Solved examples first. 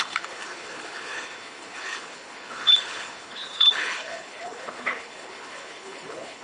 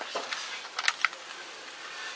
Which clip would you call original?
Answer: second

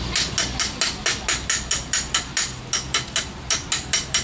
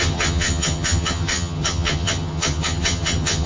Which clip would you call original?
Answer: first